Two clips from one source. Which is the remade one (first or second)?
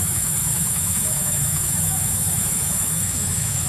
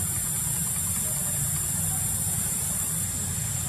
first